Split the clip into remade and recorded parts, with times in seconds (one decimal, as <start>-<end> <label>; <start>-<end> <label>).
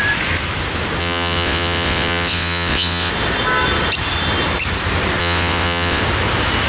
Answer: 0.0-1.0 recorded; 1.0-3.1 remade; 3.1-5.2 recorded; 5.2-6.0 remade; 6.0-6.7 recorded